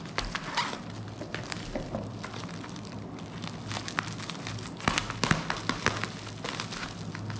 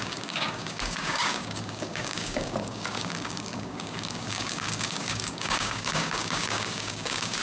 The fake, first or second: second